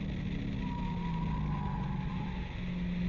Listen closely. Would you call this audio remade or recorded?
recorded